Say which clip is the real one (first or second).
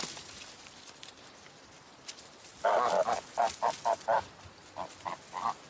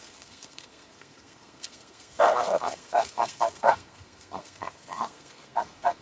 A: first